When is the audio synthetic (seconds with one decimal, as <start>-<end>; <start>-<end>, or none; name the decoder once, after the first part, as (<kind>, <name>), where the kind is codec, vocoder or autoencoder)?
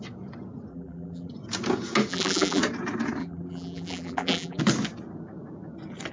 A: 0.7-1.3 (vocoder, BigVGAN v2); 2.1-2.6; 3.2-4.6